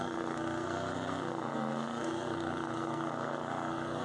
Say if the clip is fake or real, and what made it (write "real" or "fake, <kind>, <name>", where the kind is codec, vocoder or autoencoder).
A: fake, codec, SNAC